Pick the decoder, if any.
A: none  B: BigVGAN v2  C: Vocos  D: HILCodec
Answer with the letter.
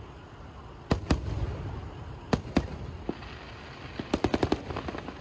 A